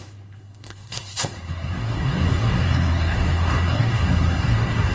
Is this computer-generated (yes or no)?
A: yes